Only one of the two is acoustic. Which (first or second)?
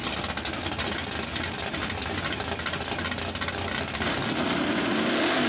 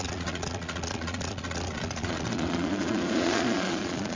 first